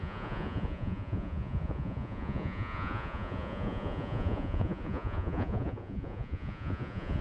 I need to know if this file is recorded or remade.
remade